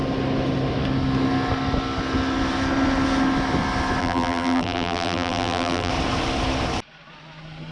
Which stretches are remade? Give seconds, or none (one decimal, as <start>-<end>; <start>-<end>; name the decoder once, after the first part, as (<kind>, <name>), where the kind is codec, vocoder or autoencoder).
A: 4.0-5.9 (vocoder, BigVGAN v2)